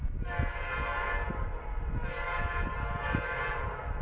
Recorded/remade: recorded